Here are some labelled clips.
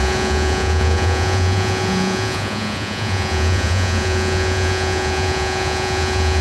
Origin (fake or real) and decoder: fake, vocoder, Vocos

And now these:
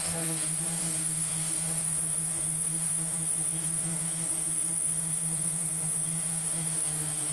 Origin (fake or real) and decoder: fake, autoencoder, DAC-VAE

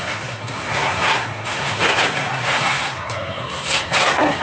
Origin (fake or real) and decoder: fake, codec, SNAC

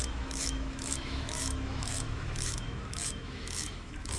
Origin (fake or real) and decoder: fake, autoencoder, DAC-VAE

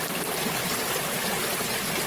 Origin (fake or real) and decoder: fake, vocoder, BigVGAN v2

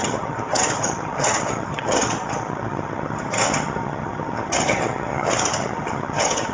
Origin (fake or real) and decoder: fake, vocoder, HiFi-GAN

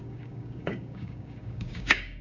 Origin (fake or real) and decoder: fake, codec, DAC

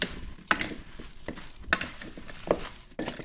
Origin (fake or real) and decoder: real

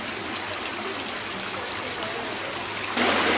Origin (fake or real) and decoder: real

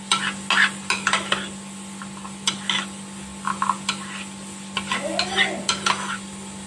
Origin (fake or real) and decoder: real